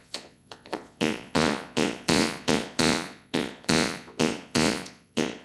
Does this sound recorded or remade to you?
remade